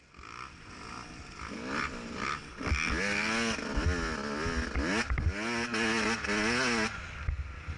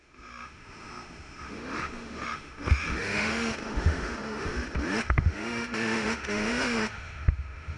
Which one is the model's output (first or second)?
second